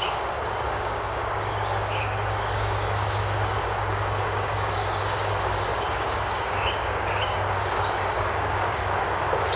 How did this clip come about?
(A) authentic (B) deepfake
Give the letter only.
B